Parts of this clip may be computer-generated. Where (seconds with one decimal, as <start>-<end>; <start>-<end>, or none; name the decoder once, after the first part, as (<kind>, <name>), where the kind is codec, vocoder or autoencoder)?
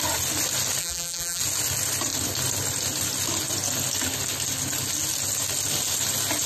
0.8-1.4 (vocoder, BigVGAN v2)